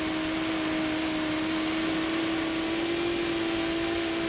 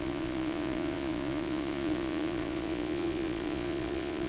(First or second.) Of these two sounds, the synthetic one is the second